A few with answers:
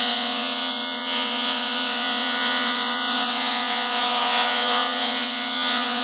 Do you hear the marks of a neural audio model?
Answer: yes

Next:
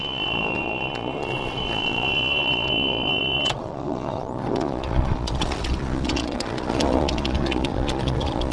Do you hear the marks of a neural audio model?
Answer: yes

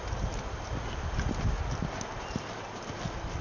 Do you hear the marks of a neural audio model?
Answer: no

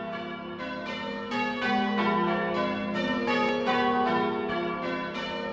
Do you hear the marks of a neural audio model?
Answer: no